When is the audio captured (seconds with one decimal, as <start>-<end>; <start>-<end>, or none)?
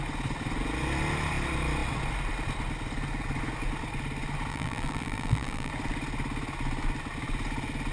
0.0-4.5; 5.7-7.9